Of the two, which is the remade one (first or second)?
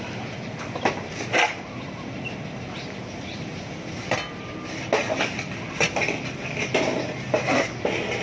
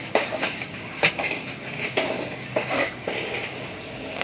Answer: second